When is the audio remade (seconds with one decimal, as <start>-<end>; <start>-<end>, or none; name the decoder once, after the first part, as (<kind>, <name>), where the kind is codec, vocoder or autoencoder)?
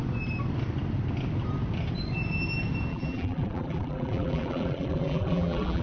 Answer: 2.9-5.8 (vocoder, BigVGAN v2)